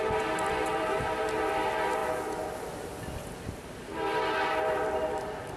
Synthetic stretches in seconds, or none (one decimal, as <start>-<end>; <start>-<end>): none